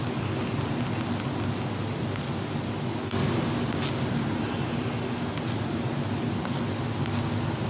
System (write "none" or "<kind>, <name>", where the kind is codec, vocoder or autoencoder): none